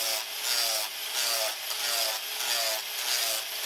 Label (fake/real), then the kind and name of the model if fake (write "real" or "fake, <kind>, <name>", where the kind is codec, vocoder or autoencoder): real